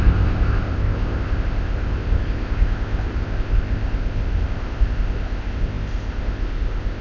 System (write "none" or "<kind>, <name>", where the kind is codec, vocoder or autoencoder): codec, ZipCodec